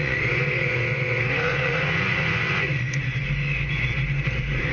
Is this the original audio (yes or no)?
no